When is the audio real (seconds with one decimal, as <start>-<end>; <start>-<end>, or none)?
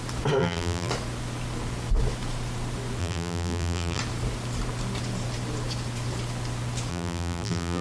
0.0-0.4; 0.9-3.0; 4.0-6.9